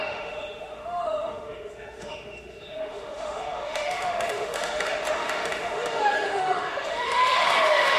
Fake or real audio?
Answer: fake